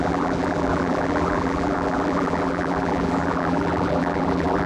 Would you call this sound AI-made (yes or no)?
yes